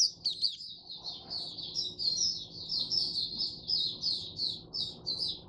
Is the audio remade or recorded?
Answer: recorded